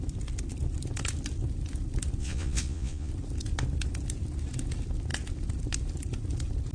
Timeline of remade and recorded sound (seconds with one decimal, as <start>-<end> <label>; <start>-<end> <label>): 0.0-2.2 recorded; 2.2-3.1 remade; 3.1-6.7 recorded